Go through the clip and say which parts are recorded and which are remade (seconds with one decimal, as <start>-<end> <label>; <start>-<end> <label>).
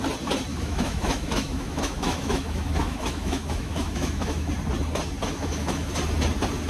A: 0.0-0.5 recorded; 0.5-4.5 remade; 4.5-5.2 recorded; 5.2-5.9 remade; 5.9-6.7 recorded